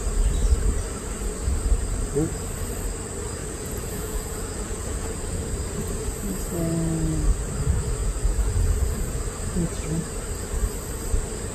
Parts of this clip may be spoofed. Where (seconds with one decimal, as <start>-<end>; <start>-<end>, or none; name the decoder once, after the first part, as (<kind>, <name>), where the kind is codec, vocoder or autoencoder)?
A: 3.4-5.4 (vocoder, Vocos); 8.0-9.2